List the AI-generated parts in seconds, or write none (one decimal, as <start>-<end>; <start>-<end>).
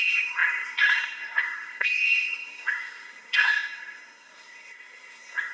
0.0-5.5